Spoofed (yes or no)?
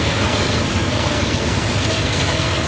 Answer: yes